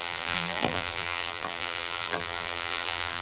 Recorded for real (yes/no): no